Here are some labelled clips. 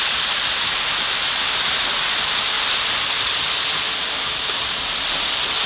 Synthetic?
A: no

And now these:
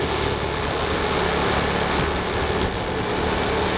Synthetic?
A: no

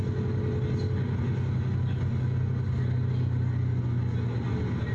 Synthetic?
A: no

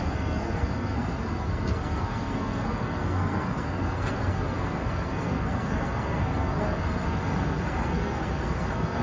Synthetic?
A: yes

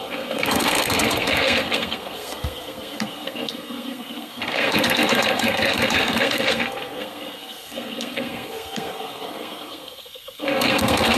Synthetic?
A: yes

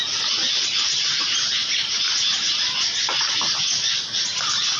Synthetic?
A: no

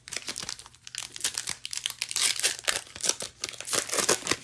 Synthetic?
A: no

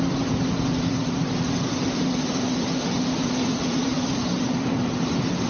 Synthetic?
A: no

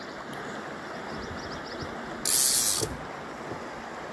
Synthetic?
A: no